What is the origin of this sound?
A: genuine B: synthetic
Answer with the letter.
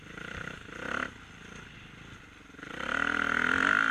B